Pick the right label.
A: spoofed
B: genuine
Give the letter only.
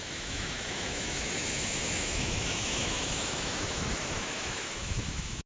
A